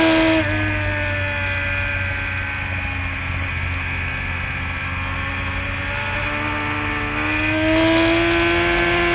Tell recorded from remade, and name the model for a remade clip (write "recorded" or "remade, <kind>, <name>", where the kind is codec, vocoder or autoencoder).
recorded